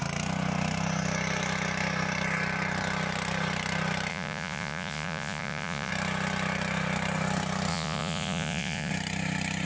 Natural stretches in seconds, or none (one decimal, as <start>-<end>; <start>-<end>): 0.0-4.1; 5.9-7.7; 8.9-9.7